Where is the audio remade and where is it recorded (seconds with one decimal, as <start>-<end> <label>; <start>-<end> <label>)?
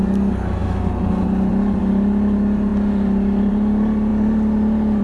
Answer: 0.0-5.0 recorded